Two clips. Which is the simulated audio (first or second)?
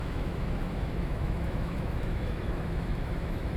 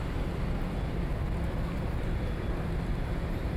first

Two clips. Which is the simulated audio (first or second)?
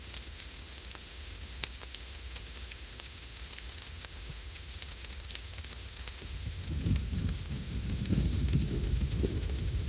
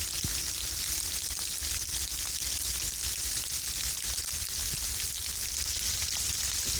first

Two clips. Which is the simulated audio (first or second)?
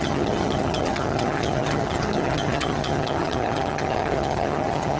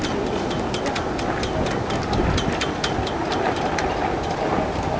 first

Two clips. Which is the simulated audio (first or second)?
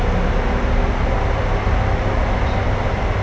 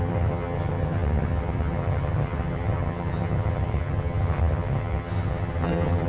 second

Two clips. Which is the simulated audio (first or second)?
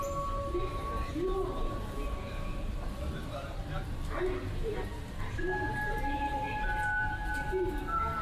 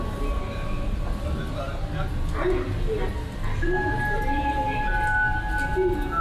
first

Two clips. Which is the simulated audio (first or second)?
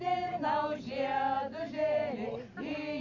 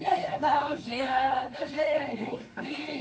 second